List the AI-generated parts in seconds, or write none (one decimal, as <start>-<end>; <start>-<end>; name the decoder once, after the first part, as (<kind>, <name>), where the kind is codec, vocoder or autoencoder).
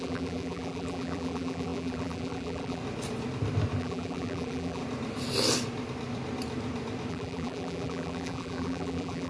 0.0-2.8 (vocoder, BigVGAN v2); 3.8-4.8; 7.1-9.3